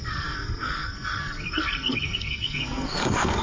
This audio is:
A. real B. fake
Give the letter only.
B